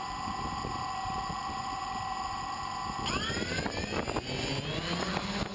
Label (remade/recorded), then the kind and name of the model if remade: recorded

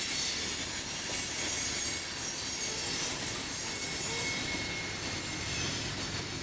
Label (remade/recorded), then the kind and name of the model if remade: recorded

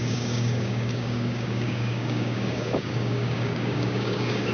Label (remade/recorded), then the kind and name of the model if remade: remade, codec, DAC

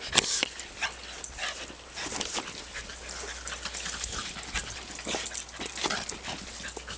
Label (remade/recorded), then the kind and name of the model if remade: recorded